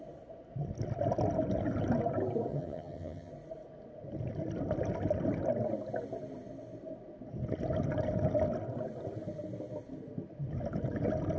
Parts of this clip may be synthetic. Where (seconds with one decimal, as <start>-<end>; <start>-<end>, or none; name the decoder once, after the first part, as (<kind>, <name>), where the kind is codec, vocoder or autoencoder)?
2.5-3.3 (vocoder, HiFi-GAN)